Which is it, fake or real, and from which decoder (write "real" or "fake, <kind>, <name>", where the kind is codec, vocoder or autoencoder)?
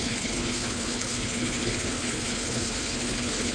fake, codec, HILCodec